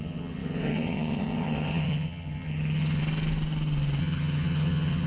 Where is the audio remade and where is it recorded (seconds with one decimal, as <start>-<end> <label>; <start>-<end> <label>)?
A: 0.0-3.0 remade; 3.0-4.0 recorded; 4.0-5.1 remade